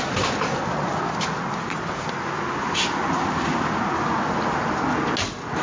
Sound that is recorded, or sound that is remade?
recorded